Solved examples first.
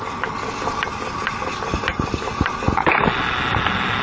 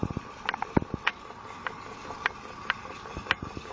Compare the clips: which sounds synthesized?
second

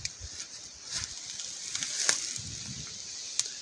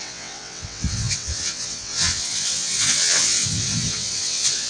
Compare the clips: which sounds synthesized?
second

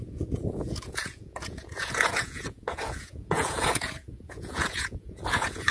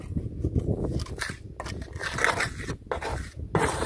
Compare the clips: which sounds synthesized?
first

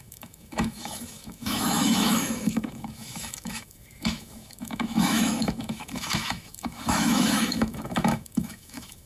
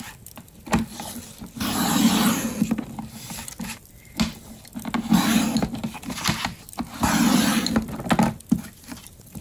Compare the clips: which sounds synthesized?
first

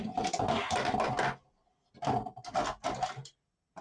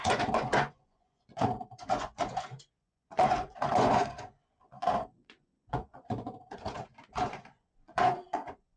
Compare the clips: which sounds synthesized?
second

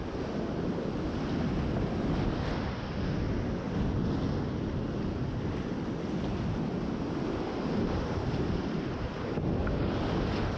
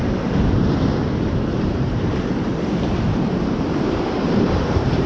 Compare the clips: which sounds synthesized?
second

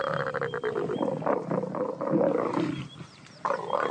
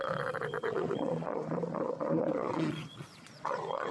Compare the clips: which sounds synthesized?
second